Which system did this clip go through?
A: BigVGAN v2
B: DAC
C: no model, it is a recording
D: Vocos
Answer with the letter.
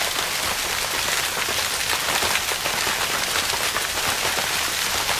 C